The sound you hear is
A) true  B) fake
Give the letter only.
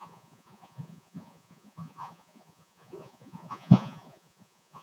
B